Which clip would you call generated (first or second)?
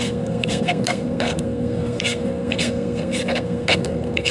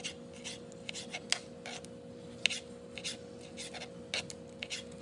first